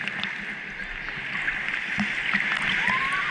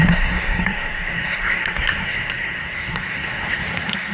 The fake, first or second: second